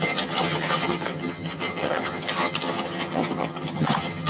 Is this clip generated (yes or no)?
yes